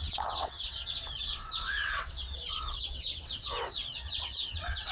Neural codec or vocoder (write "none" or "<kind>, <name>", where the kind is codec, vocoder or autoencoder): vocoder, WaveNeXt